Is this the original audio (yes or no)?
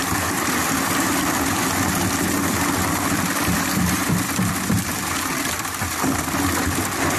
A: no